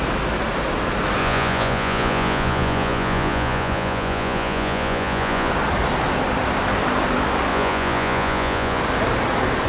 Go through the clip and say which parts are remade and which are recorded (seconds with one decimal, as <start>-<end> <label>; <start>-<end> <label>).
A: 0.0-1.2 recorded; 1.2-5.5 remade; 5.5-7.5 recorded; 7.5-8.8 remade; 8.8-9.7 recorded